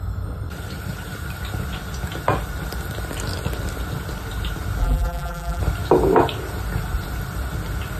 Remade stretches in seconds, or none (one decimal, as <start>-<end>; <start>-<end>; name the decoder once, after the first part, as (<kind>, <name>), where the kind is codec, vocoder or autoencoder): 4.8-5.6 (vocoder, BigVGAN v2)